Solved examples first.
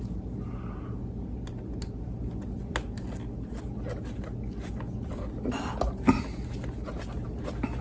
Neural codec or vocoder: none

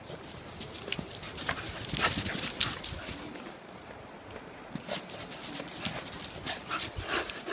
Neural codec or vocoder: none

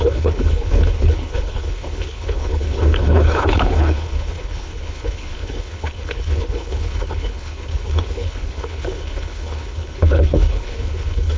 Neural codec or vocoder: codec, HILCodec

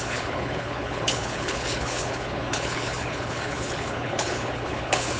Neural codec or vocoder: codec, HILCodec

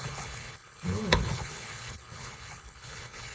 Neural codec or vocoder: codec, HILCodec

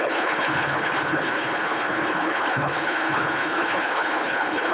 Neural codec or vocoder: codec, HILCodec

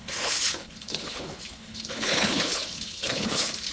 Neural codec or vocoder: codec, HILCodec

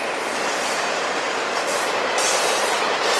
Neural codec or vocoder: none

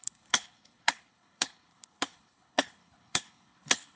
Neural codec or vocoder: codec, HILCodec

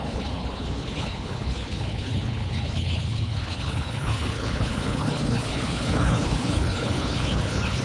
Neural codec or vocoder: codec, HILCodec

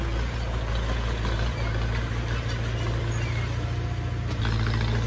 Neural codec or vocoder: none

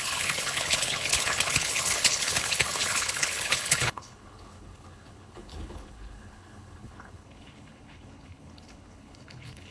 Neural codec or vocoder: codec, HILCodec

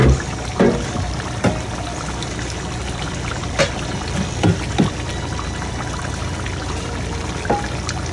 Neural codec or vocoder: none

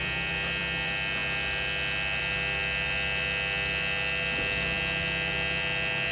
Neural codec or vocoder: none